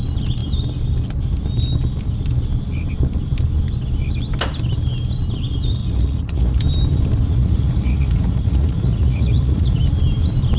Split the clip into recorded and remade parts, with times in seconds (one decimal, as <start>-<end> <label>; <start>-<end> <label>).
0.0-5.8 recorded; 5.8-6.6 remade; 6.6-7.3 recorded; 7.3-9.8 remade; 9.8-10.6 recorded